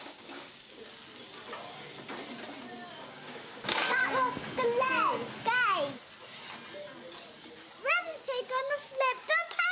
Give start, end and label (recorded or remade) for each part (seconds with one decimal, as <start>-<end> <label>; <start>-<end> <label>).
0.0-0.8 remade; 0.8-3.0 recorded; 3.0-4.0 remade; 4.0-7.9 recorded; 7.9-9.7 remade